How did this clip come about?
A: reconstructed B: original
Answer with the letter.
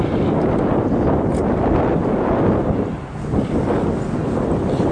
B